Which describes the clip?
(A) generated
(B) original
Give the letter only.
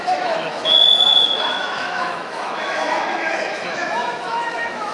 A